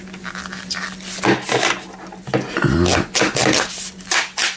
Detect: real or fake real